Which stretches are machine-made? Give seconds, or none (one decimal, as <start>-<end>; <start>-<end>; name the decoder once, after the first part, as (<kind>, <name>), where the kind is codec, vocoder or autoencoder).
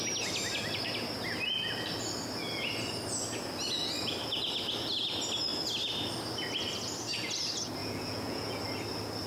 7.8-8.6 (vocoder, Vocos)